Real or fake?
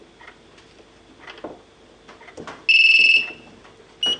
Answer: real